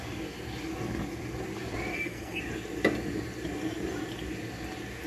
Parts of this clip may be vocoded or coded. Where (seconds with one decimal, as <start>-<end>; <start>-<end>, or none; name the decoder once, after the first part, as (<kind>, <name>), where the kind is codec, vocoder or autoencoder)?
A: 1.9-2.4 (codec, SNAC)